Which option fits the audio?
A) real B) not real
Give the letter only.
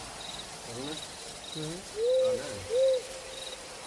A